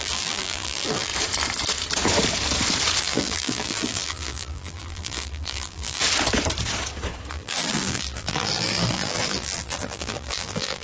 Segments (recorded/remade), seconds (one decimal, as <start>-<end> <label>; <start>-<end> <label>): 0.0-1.1 remade; 1.1-3.0 recorded; 3.0-6.0 remade; 6.0-7.3 recorded; 7.3-10.8 remade